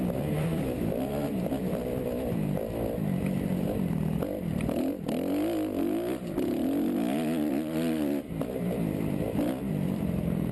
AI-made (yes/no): yes